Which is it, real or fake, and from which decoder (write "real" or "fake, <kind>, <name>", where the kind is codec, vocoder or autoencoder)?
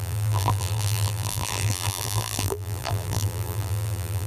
fake, vocoder, BigVGAN v2